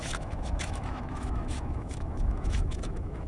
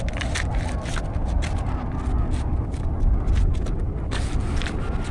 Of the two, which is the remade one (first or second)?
first